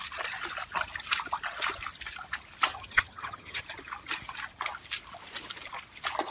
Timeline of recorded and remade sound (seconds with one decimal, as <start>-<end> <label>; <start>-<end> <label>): 0.0-2.7 recorded; 2.7-3.6 remade; 3.6-6.3 recorded